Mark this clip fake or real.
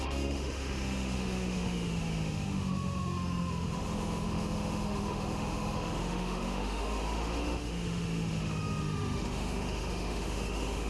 fake